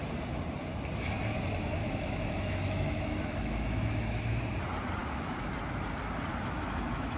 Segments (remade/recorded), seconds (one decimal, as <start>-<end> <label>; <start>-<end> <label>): 0.0-1.8 recorded; 1.8-4.4 remade; 4.4-5.0 recorded; 5.0-5.5 remade; 5.5-6.3 recorded; 6.3-7.2 remade